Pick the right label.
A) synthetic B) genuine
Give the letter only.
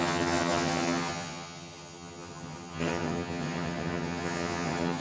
A